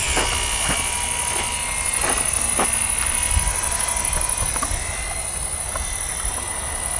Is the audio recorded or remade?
recorded